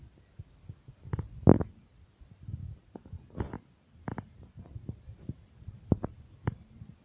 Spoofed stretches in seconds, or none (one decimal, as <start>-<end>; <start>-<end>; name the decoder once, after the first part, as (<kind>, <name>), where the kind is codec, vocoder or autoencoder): none